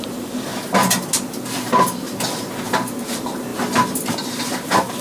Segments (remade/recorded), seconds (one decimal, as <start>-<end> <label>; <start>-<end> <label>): 0.0-0.5 remade; 0.5-2.7 recorded; 2.7-5.0 remade